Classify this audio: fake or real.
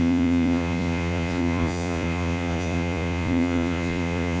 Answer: fake